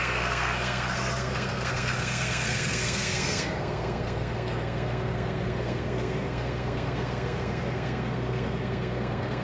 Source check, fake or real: fake